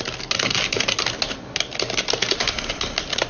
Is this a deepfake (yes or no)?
no